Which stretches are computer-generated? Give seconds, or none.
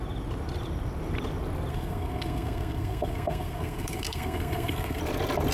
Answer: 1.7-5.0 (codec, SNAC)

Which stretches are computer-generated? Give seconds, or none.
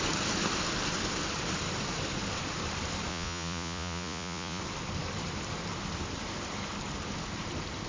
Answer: 3.1-4.6 (vocoder, Vocos)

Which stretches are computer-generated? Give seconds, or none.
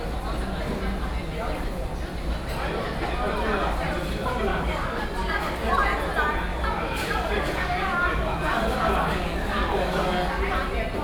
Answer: 4.5-5.7 (codec, DAC); 6.5-10.4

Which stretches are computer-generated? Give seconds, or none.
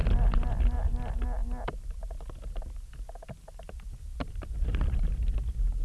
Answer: none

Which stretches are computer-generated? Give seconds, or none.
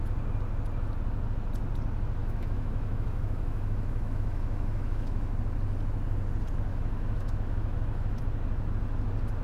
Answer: 2.2-5.3 (autoencoder, DAC-VAE); 6.7-8.2